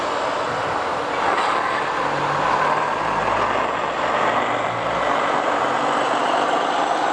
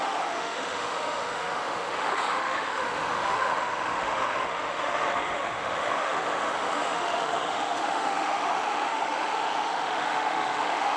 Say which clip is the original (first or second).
first